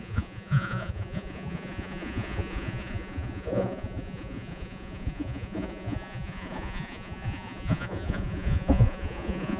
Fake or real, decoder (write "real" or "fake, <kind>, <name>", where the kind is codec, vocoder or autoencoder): fake, vocoder, Vocos